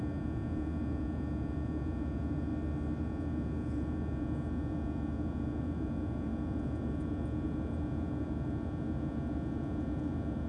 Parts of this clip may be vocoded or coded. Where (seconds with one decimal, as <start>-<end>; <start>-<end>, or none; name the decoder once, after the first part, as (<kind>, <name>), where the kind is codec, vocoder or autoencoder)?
0.0-2.5 (vocoder, Vocos); 3.0-10.5